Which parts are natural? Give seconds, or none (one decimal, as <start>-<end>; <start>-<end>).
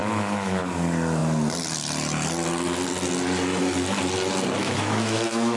0.6-4.6